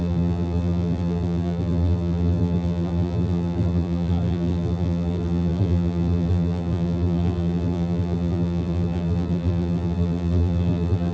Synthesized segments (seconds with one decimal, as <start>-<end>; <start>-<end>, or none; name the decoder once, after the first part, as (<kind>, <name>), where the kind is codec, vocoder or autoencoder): 0.0-11.1 (vocoder, BigVGAN v2)